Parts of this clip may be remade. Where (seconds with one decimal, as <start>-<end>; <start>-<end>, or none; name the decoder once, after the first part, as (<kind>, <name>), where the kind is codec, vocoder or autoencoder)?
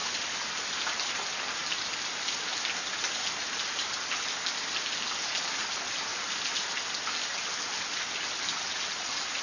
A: 0.0-0.8 (vocoder, BigVGAN v2); 6.1-6.8